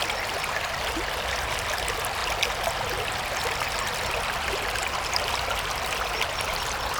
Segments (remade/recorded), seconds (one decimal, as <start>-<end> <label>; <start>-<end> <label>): 0.0-7.0 recorded